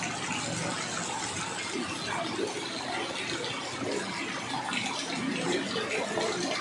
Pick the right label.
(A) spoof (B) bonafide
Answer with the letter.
B